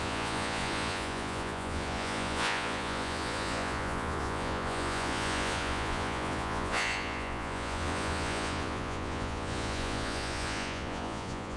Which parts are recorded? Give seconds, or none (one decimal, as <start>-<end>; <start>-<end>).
none